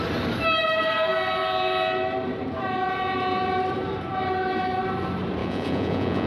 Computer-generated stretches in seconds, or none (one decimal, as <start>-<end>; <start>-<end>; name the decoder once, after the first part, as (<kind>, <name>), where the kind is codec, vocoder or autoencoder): 5.4-6.3 (vocoder, Vocos)